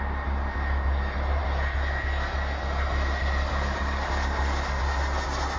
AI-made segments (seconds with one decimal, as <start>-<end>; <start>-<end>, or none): none